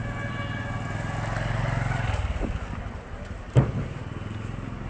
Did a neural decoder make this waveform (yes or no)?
no